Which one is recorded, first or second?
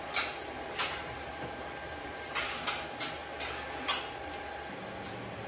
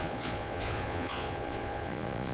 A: first